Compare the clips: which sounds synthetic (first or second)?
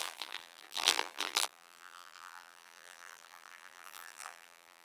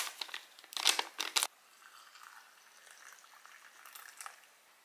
first